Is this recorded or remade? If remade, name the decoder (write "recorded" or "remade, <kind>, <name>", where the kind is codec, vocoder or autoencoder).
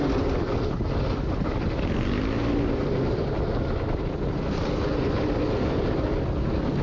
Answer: recorded